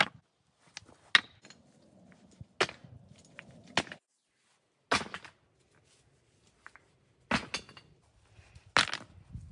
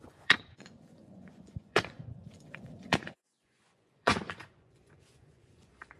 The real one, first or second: first